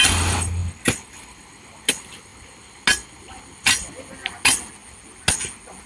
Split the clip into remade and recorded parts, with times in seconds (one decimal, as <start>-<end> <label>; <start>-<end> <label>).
0.0-5.9 recorded